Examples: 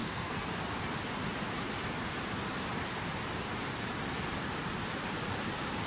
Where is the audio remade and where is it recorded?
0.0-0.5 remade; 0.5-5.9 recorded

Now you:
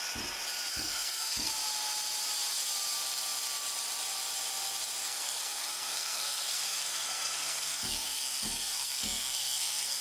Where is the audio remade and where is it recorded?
0.0-0.7 recorded; 0.7-1.5 remade; 1.5-5.0 recorded; 5.0-10.0 remade

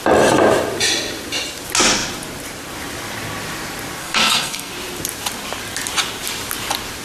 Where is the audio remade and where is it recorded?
0.0-4.0 recorded; 4.0-4.7 remade; 4.7-7.0 recorded

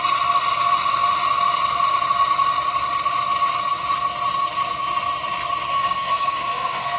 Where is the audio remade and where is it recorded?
0.0-5.7 recorded; 5.7-7.0 remade

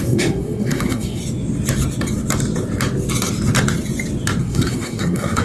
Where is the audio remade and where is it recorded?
0.0-1.2 remade; 1.2-4.4 recorded; 4.4-5.4 remade

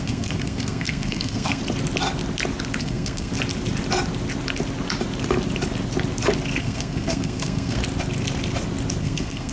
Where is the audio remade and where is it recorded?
0.0-1.6 remade; 1.6-2.8 recorded; 2.8-3.3 remade; 3.3-6.6 recorded; 6.6-7.8 remade; 7.8-9.0 recorded; 9.0-9.5 remade

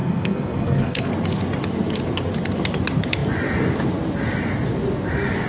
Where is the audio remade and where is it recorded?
0.0-1.1 remade; 1.1-5.5 recorded

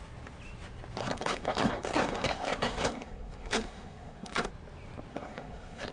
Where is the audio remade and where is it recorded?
0.0-1.0 recorded; 1.0-4.5 remade; 4.5-5.1 recorded; 5.1-5.9 remade